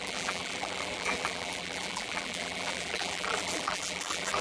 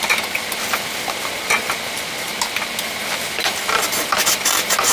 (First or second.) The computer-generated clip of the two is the first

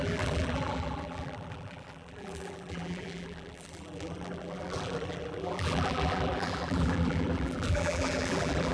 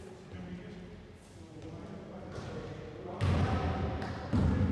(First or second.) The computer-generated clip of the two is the first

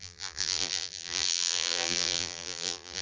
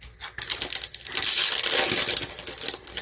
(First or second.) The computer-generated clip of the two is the first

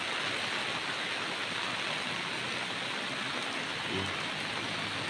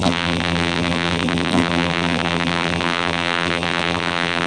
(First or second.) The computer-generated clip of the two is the second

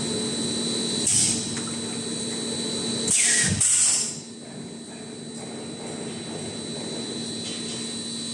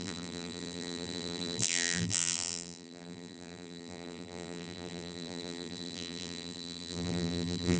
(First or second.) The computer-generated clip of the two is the second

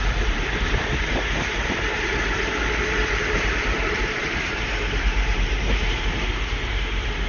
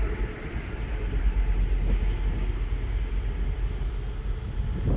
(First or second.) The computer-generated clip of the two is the first